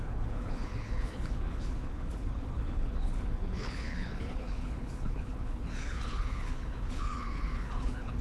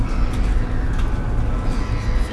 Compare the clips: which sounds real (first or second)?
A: second